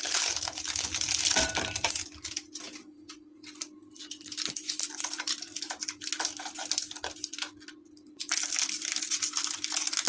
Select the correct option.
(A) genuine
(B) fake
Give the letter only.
A